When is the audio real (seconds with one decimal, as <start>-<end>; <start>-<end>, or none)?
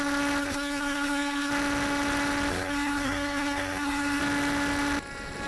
0.0-0.4; 1.5-2.5; 4.2-5.5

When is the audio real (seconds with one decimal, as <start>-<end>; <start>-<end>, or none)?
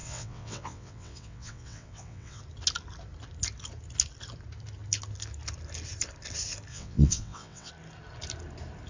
2.4-6.7; 7.7-8.9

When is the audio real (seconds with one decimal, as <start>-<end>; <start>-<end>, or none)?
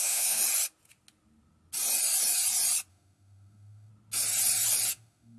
0.4-2.9; 3.9-4.9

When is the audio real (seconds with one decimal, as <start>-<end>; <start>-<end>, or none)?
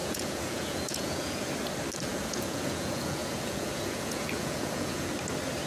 1.5-2.1; 5.1-5.7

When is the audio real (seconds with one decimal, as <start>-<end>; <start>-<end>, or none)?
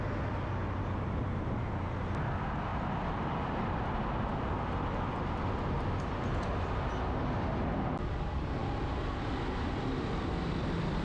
0.0-2.7; 3.6-11.0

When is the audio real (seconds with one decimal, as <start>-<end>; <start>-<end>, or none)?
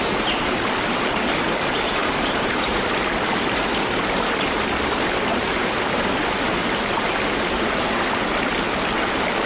0.0-2.0; 2.8-5.3; 6.0-9.5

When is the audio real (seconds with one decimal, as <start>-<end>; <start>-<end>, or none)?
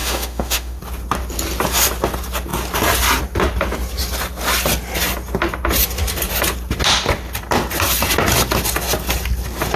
0.8-9.8